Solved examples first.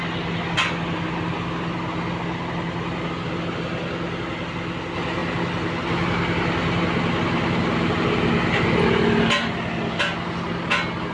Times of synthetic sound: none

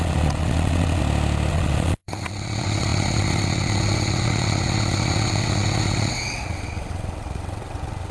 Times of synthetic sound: 0.0-1.0 (vocoder, WaveNeXt); 1.5-8.1

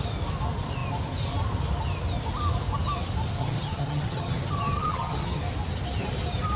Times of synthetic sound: 3.4-5.4 (vocoder, HiFi-GAN)

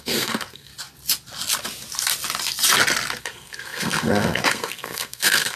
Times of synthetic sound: 0.0-0.7 (codec, SNAC); 3.2-5.6